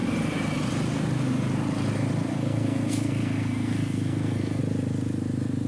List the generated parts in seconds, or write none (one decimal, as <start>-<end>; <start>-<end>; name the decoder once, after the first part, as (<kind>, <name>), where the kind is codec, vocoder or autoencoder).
2.3-4.6 (codec, SNAC)